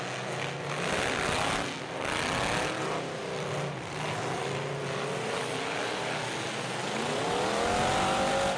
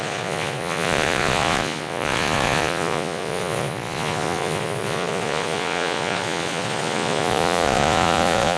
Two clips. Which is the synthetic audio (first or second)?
second